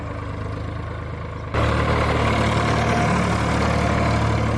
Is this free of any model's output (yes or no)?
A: yes